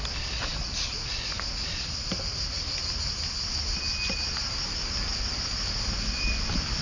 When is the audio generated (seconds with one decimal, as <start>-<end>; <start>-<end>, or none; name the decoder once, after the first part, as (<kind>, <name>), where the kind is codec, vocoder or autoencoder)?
none